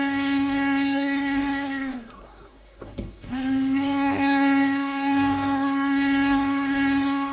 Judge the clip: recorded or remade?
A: remade